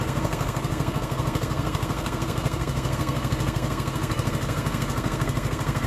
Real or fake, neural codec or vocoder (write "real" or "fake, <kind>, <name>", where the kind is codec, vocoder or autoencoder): fake, codec, SNAC